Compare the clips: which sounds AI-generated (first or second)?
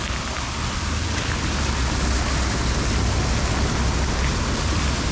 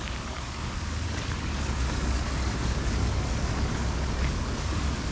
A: second